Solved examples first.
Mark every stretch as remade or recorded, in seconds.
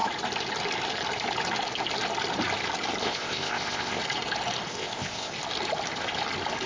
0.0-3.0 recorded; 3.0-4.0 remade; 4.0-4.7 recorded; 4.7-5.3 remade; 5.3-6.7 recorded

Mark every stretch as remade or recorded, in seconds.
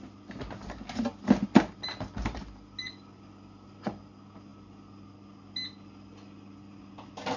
0.0-7.4 recorded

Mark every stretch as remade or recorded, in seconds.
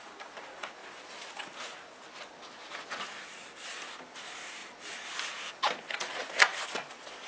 0.0-7.3 recorded